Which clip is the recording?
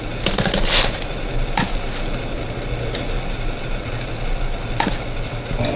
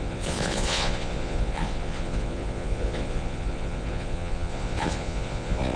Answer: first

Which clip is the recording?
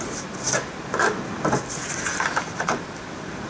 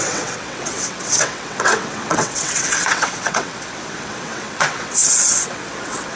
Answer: first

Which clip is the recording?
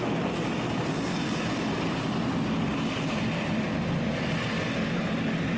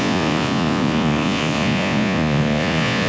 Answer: first